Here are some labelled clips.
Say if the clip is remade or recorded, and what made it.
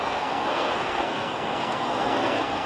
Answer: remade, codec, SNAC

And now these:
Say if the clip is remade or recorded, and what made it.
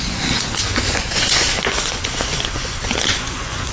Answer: remade, vocoder, Vocos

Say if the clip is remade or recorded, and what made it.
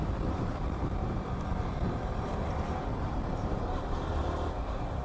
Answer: remade, vocoder, BigVGAN v2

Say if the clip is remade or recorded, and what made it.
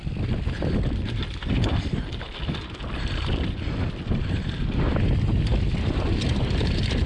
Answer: recorded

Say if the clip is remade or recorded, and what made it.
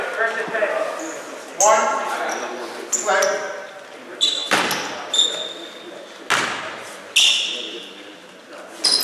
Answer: recorded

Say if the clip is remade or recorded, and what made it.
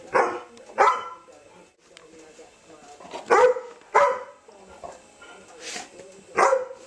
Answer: recorded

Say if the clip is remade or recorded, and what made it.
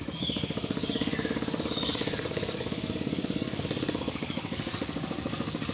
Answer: remade, codec, DAC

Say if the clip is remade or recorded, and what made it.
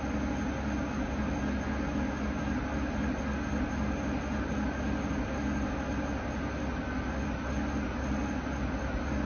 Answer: recorded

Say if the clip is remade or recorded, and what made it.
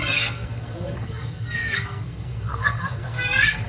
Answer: remade, codec, SNAC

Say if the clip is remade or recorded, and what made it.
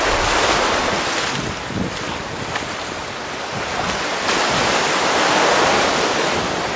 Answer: recorded